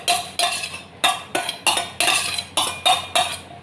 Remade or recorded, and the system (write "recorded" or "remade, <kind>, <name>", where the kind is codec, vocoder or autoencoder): recorded